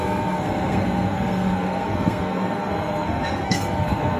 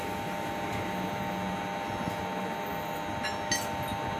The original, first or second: second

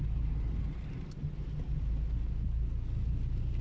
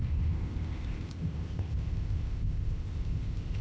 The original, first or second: first